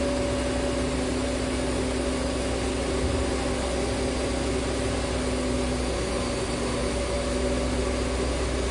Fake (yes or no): no